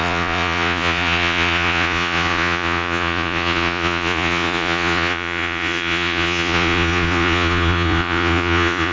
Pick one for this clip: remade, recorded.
remade